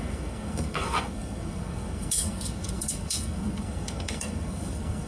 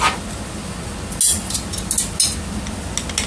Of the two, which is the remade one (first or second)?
first